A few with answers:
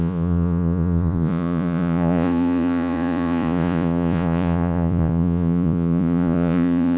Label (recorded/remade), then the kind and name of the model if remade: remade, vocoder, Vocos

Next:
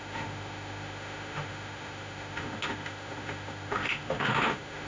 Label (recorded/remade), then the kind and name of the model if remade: remade, autoencoder, DAC-VAE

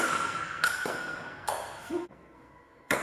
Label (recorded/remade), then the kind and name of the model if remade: remade, codec, SNAC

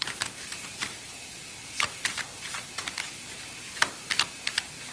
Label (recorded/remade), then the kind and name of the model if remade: recorded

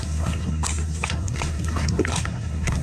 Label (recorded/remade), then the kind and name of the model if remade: remade, codec, SNAC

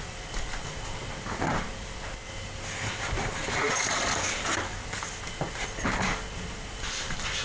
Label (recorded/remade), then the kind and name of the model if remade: recorded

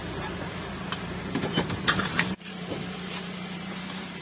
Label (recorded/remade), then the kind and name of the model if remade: remade, vocoder, BigVGAN v2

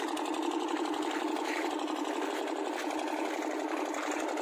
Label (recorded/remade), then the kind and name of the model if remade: recorded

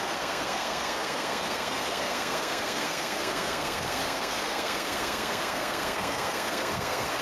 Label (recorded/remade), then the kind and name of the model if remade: remade, codec, SNAC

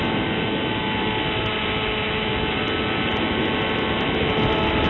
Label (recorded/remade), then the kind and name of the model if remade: recorded